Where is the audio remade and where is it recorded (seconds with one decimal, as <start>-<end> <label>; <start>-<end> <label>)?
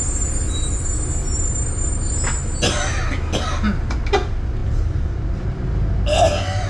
0.0-4.6 recorded; 4.6-5.6 remade; 5.6-6.7 recorded